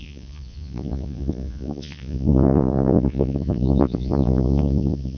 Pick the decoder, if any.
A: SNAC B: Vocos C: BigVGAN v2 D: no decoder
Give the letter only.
B